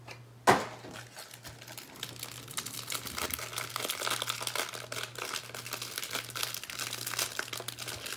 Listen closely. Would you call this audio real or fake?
real